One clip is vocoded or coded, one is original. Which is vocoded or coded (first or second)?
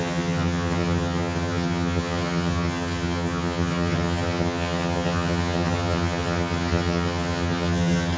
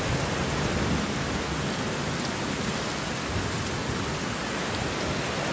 first